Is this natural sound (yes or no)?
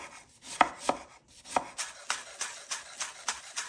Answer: yes